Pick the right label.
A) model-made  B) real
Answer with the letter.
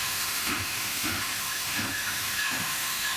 A